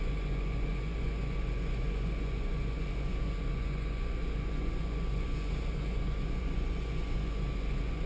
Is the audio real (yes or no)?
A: no